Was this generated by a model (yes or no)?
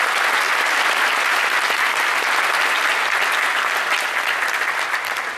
no